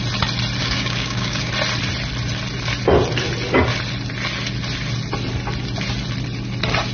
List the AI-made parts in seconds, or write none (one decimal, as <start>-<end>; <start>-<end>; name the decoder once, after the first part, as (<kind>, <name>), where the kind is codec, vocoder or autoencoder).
0.6-1.5 (codec, DAC)